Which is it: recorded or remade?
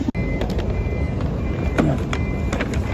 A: recorded